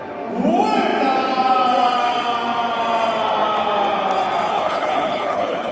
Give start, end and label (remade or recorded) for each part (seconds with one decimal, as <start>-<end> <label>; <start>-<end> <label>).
0.0-4.5 recorded; 4.5-5.7 remade